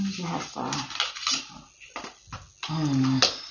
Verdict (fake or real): real